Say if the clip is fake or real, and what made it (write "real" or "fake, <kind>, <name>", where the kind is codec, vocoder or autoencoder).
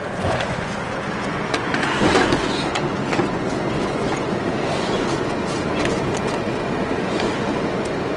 fake, vocoder, Vocos